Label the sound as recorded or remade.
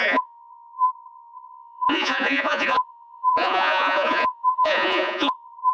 remade